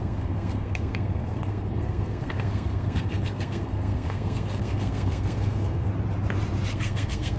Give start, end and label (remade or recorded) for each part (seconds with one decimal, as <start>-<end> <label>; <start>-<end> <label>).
0.0-5.9 remade; 5.9-6.7 recorded; 6.7-7.4 remade